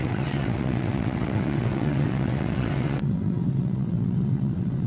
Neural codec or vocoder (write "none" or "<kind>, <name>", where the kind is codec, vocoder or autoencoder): vocoder, WaveNeXt